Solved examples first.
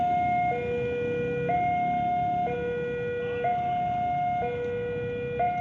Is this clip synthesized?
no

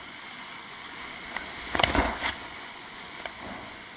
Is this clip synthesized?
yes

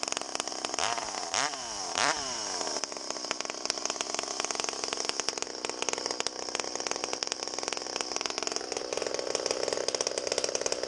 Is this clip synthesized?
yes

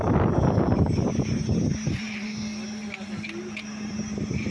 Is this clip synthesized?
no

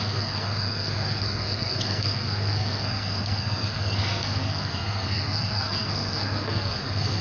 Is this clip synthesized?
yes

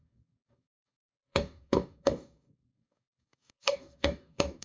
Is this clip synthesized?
yes